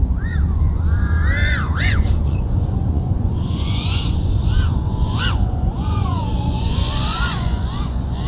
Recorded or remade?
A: remade